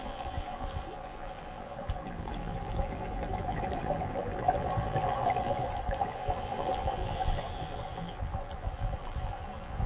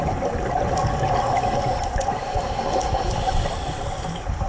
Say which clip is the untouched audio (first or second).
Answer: second